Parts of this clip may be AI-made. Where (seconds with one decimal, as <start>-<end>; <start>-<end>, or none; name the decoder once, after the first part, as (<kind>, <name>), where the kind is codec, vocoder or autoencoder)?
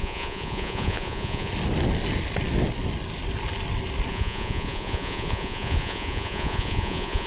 0.0-1.5 (vocoder, Vocos); 4.1-7.3